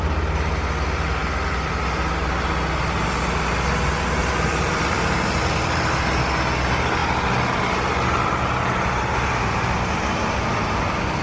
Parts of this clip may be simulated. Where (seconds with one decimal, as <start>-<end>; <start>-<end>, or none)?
4.2-6.0